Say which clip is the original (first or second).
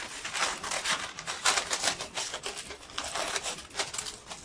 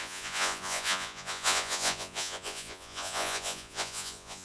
first